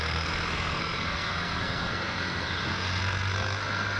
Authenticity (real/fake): fake